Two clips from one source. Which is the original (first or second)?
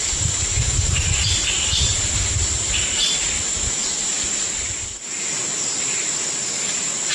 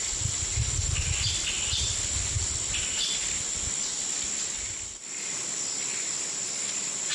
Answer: second